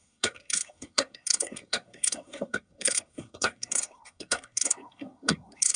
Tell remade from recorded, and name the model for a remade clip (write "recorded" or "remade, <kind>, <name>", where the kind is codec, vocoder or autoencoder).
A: remade, codec, SNAC